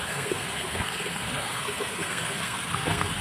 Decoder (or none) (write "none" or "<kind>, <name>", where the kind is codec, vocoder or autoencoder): codec, SNAC